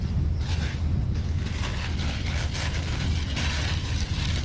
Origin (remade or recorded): recorded